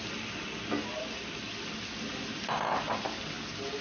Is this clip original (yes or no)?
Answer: yes